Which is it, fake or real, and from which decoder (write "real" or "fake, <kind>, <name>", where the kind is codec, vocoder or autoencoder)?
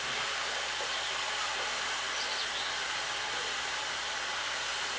fake, vocoder, BigVGAN v2